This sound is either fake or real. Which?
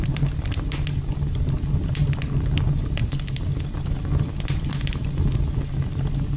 real